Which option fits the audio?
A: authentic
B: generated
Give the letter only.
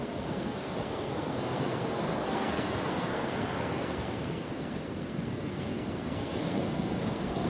B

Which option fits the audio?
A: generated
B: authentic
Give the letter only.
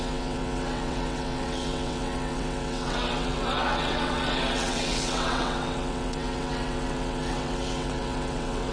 A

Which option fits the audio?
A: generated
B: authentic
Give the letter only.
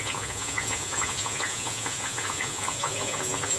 A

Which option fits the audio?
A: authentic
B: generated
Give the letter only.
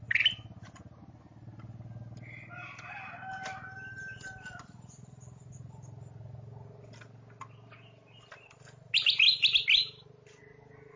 A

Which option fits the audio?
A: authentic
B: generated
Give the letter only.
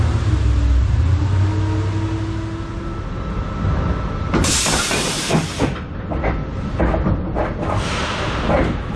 A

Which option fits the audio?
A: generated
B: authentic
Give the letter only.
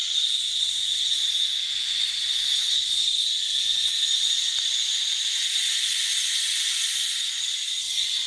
A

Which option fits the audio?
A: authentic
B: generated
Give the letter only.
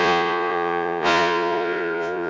B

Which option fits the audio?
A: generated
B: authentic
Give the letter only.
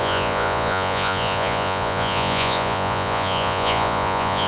A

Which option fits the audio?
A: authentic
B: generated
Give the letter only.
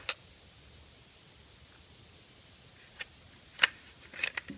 A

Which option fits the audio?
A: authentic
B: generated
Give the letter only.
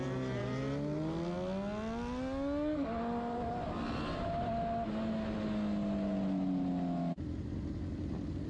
A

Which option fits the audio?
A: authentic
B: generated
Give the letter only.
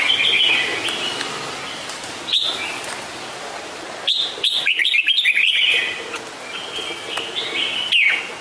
A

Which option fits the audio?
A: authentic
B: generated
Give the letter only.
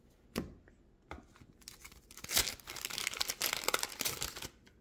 A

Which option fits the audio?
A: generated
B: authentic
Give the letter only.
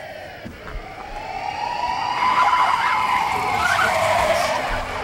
B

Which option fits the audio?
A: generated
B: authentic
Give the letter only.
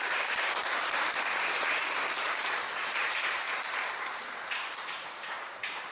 A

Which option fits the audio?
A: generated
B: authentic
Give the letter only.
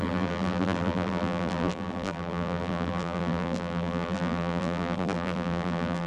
A